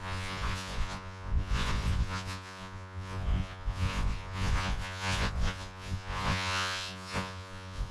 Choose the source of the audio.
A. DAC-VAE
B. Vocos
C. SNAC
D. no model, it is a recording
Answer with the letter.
B